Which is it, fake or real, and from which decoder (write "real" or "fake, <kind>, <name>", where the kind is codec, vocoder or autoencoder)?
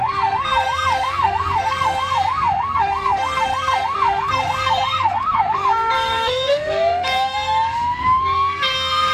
fake, codec, SNAC